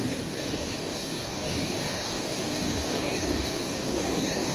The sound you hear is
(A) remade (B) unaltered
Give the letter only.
A